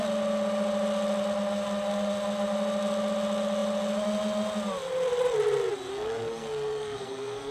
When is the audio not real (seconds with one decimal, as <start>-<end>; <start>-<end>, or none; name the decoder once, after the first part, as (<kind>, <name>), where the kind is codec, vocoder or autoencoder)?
5.9-7.5 (codec, SNAC)